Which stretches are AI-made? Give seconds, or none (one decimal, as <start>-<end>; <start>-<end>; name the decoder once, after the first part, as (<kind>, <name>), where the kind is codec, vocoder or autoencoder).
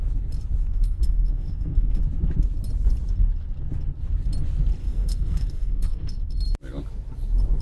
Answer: 0.6-2.0 (codec, SNAC); 4.8-6.3